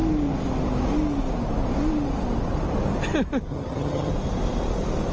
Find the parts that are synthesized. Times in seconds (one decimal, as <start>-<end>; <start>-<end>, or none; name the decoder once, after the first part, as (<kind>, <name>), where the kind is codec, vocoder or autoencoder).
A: 3.5-4.1 (vocoder, HiFi-GAN)